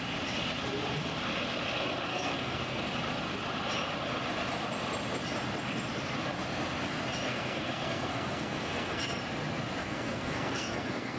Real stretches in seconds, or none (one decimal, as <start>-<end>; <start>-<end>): 0.0-2.1; 2.8-7.3; 9.2-9.8